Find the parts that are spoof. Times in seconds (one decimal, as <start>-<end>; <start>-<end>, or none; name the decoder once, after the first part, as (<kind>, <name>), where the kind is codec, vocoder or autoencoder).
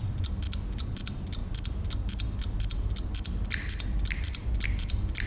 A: 0.8-5.3 (vocoder, BigVGAN v2)